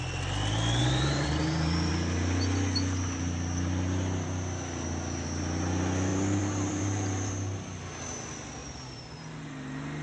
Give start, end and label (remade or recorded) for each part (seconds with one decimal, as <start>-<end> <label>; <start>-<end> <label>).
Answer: 0.0-0.8 recorded; 0.8-1.9 remade; 1.9-6.1 recorded; 6.1-7.3 remade; 7.3-8.6 recorded; 8.6-9.2 remade; 9.2-10.0 recorded